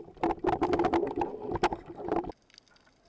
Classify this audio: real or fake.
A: real